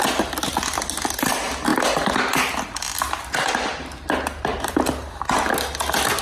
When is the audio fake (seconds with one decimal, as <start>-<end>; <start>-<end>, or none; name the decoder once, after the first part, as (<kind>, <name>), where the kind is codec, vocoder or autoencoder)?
4.5-5.1 (vocoder, BigVGAN v2)